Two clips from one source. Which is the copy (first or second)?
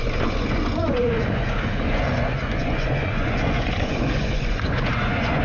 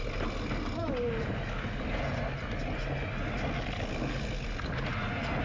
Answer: first